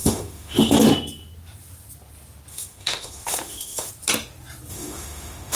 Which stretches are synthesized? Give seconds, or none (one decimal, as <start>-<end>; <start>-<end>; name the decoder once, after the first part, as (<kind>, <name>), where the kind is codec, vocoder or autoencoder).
0.0-0.8 (autoencoder, DAC-VAE); 2.5-3.9; 4.7-5.6